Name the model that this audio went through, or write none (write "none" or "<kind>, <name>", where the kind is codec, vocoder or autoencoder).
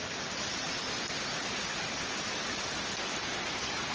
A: none